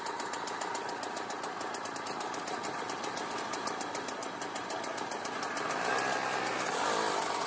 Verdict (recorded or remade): recorded